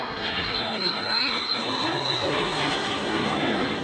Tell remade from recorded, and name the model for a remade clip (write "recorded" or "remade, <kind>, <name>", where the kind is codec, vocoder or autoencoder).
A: remade, codec, SNAC